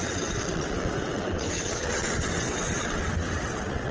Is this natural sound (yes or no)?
no